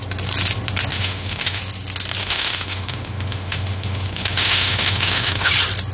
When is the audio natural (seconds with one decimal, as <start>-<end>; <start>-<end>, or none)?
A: 0.0-0.9; 1.6-2.2; 5.5-5.9